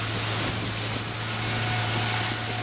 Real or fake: real